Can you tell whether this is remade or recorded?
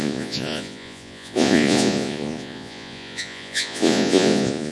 remade